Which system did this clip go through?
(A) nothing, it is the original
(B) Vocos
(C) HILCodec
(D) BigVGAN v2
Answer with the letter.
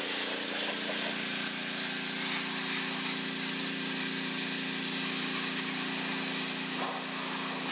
A